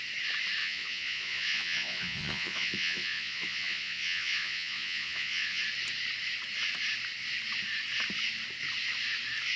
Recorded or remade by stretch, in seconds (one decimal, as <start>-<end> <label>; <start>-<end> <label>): 0.0-0.6 recorded; 0.6-5.6 remade; 5.6-9.6 recorded